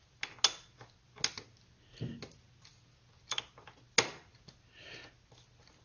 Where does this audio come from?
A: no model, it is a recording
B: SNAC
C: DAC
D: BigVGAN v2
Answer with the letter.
A